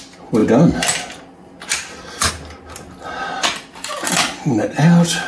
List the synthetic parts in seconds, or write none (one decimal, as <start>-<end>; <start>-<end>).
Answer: none